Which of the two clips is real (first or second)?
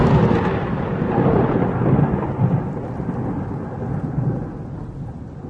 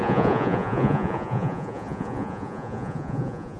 first